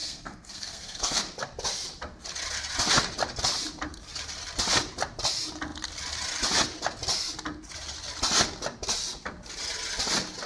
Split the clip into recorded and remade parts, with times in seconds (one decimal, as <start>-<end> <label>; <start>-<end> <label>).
0.0-1.2 remade; 1.2-10.5 recorded